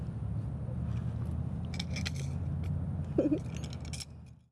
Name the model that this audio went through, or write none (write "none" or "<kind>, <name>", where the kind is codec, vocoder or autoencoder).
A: none